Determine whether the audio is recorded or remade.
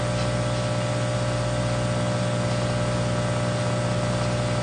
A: recorded